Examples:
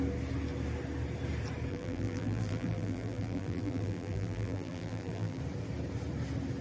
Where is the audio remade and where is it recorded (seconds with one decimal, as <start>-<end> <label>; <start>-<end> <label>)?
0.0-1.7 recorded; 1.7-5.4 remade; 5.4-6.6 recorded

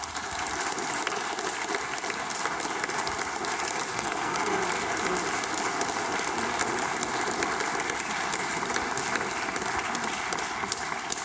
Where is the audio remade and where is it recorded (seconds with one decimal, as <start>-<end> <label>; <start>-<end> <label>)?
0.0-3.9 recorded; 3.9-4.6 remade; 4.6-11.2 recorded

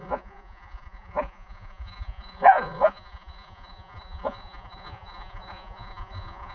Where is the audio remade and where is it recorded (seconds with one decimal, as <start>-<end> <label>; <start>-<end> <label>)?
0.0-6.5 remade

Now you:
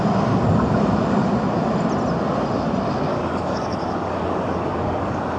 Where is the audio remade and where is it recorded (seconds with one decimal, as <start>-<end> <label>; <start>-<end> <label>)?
0.0-3.1 recorded; 3.1-5.4 remade